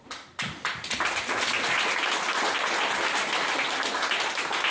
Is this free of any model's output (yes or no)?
yes